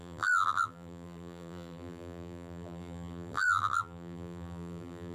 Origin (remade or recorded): remade